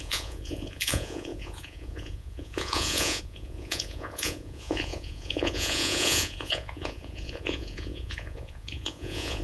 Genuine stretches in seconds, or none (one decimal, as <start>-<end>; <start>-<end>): none